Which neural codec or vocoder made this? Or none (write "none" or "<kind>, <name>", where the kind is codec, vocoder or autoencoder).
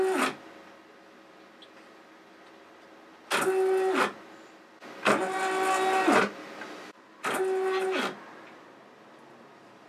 none